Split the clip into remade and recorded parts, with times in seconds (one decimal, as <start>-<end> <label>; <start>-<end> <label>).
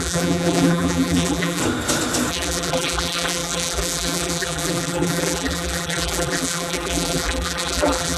0.0-1.6 remade; 1.6-2.3 recorded; 2.3-8.2 remade